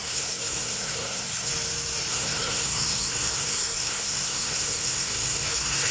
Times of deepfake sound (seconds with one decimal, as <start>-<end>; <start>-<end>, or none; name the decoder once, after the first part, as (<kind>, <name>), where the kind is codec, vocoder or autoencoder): 0.0-1.5 (codec, SNAC); 2.1-5.9

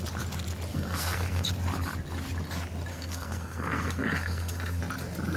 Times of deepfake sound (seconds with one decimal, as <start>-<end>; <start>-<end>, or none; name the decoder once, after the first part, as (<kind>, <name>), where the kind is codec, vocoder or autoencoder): 0.7-1.5 (codec, SNAC); 2.9-4.8

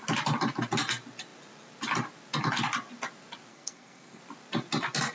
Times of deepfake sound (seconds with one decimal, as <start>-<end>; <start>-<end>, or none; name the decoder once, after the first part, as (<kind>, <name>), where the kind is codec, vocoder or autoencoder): 3.5-4.2 (codec, SNAC)